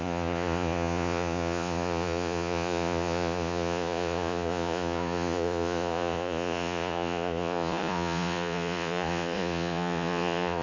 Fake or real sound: fake